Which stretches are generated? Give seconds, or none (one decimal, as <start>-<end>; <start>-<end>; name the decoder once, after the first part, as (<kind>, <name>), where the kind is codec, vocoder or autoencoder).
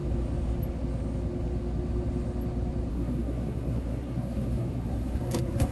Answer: 2.9-5.7 (codec, SNAC)